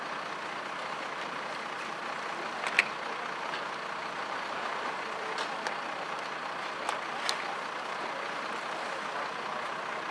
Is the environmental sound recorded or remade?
recorded